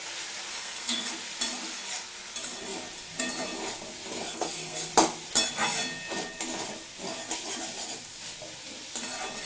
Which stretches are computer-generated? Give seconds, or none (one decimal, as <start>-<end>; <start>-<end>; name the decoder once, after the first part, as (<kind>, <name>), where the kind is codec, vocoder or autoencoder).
0.5-1.1 (codec, SNAC); 4.2-4.9

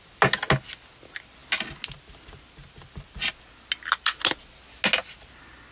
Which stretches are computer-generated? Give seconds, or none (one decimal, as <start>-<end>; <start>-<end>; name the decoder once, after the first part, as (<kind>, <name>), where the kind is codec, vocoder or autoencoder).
none

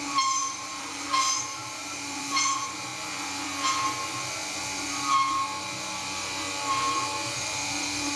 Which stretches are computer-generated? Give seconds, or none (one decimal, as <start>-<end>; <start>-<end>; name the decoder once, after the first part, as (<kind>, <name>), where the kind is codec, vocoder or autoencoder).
0.0-2.9 (vocoder, BigVGAN v2); 7.4-8.2

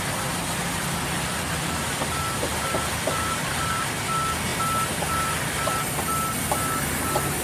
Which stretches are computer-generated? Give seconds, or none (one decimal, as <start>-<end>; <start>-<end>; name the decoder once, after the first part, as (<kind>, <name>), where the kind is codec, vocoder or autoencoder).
2.5-3.5 (vocoder, BigVGAN v2)

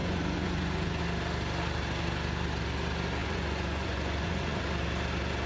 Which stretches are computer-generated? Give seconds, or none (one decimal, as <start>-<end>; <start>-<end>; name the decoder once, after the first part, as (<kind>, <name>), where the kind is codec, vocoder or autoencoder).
0.0-1.0 (vocoder, Vocos); 3.2-4.7

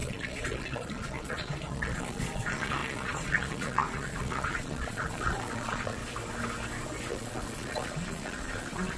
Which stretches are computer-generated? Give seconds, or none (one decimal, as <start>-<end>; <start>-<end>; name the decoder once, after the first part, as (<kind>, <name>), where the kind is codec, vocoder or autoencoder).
0.0-6.0 (vocoder, Vocos); 7.1-9.0